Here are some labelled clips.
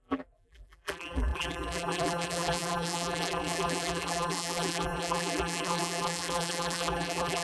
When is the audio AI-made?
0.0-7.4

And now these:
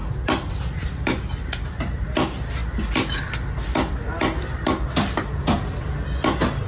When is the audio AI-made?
none

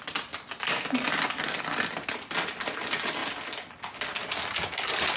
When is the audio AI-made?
none

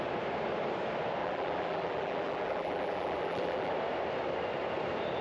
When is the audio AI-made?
1.2-3.7

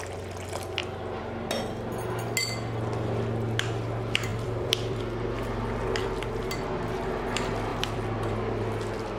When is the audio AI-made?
0.8-1.5; 4.3-5.0; 6.0-6.5; 7.7-8.3